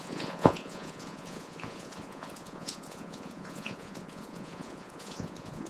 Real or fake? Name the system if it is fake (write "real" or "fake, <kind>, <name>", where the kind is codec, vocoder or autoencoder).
fake, vocoder, Vocos